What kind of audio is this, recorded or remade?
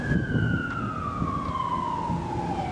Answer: recorded